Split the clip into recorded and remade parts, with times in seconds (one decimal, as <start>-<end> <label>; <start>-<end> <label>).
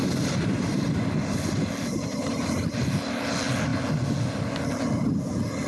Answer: 0.0-2.9 remade; 2.9-5.7 recorded